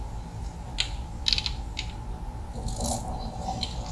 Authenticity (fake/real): real